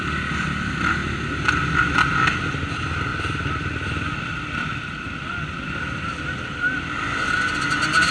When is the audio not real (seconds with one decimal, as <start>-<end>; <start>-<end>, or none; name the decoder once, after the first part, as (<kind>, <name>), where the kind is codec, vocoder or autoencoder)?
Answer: none